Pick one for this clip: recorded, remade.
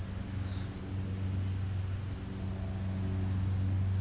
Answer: recorded